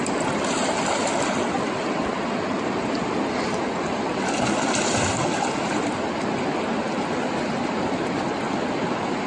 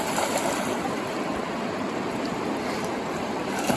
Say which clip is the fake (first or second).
second